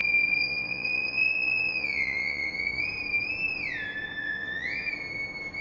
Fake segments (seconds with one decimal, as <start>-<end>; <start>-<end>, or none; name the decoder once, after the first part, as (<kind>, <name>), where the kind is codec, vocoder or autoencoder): 0.0-2.8 (vocoder, Vocos); 4.2-4.9